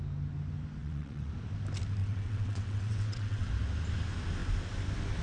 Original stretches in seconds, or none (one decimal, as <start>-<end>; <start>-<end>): 0.0-0.8; 1.3-2.0; 3.5-5.2

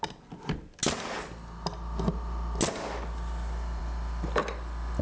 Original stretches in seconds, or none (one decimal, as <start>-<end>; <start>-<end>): 0.0-5.0

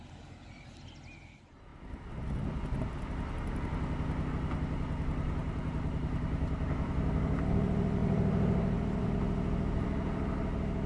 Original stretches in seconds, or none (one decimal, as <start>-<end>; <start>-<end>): 0.0-5.4; 6.7-8.0; 9.1-10.9

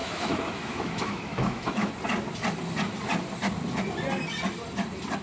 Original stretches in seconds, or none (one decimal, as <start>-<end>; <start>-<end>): 1.9-5.2

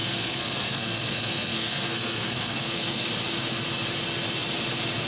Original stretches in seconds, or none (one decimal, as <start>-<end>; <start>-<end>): 3.1-5.1